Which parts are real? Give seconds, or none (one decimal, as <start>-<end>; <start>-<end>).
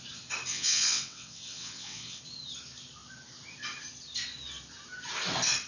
0.0-0.5; 2.2-5.7